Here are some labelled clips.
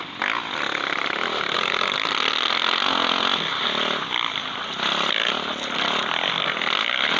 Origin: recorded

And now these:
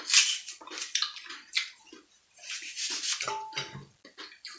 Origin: recorded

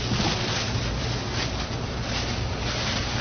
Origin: recorded